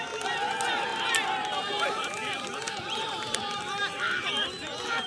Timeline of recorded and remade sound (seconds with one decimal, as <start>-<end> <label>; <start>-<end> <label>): 0.0-0.9 recorded; 0.9-3.6 remade; 3.6-5.1 recorded